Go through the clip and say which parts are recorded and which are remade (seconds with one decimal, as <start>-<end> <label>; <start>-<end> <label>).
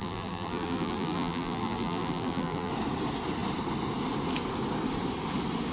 0.0-2.7 remade; 2.7-5.7 recorded